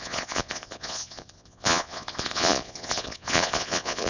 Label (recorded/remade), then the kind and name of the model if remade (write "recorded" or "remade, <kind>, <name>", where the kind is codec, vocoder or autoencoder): remade, vocoder, Vocos